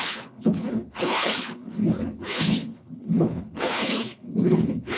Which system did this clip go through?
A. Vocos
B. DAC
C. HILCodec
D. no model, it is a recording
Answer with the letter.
C